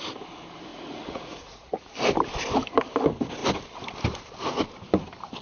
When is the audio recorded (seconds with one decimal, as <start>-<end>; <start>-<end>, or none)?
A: 0.0-0.7; 1.8-5.4